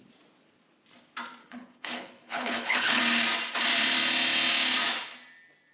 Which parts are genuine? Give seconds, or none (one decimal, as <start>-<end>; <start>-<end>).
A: 0.0-1.4; 3.0-5.7